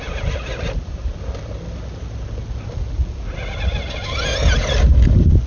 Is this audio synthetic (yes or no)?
no